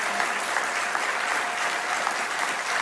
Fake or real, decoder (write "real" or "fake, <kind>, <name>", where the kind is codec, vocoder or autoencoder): real